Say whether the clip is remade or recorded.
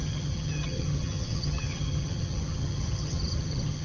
remade